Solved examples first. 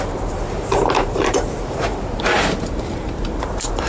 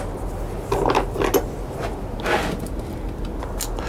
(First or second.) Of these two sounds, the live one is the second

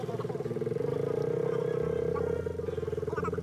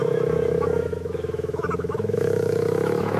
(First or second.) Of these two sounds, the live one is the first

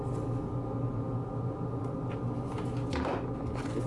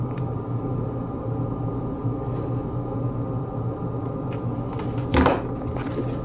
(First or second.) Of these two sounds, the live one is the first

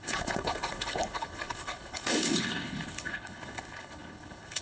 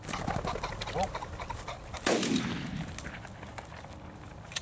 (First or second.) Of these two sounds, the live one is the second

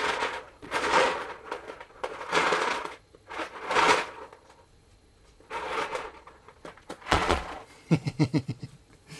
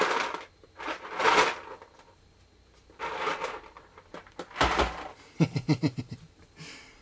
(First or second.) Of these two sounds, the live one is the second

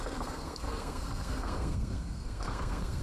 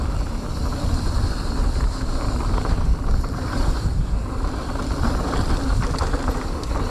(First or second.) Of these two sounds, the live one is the second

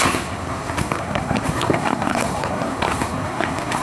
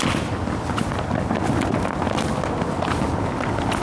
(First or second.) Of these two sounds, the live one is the second